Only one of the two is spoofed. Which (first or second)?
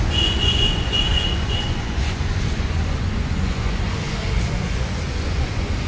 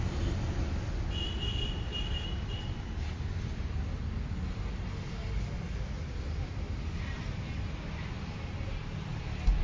first